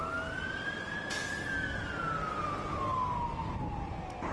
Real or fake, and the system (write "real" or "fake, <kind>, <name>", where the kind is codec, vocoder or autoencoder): real